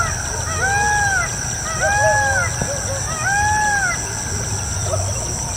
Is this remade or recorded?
recorded